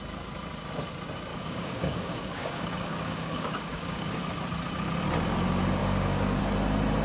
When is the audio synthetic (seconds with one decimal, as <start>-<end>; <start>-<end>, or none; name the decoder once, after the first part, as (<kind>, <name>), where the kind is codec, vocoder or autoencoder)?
1.3-4.2 (codec, DAC); 5.8-6.4